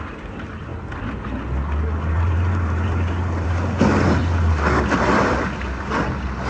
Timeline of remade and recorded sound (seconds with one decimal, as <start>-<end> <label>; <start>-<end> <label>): 0.0-0.7 remade; 0.7-2.0 recorded; 2.0-4.2 remade; 4.2-6.5 recorded